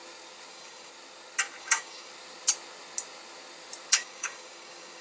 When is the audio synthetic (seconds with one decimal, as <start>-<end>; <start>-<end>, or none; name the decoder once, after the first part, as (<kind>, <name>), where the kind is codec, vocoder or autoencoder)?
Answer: 0.5-0.9 (codec, DAC); 1.6-2.1; 3.9-5.0